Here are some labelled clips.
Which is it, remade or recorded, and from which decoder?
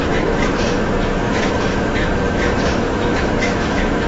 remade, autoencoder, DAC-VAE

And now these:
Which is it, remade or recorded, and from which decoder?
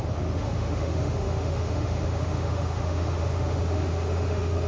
remade, autoencoder, DAC-VAE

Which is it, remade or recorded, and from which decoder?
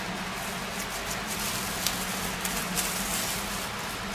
recorded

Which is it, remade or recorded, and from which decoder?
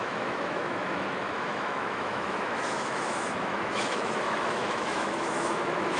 remade, autoencoder, DAC-VAE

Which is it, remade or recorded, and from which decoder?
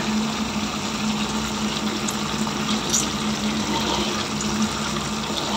recorded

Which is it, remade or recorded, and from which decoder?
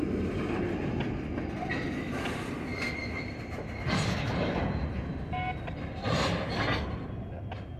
recorded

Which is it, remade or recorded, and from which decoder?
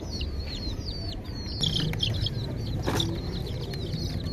recorded